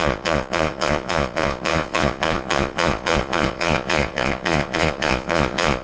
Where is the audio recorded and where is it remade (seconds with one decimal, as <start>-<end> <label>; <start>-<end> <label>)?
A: 0.0-5.8 remade